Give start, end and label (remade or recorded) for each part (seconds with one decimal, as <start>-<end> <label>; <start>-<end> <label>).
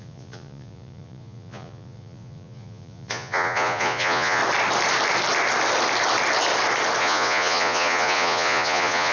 0.0-4.4 remade; 4.4-7.0 recorded; 7.0-9.1 remade